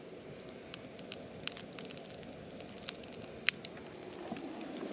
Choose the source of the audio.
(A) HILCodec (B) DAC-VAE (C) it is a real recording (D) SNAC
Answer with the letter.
C